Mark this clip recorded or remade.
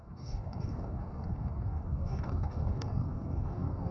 remade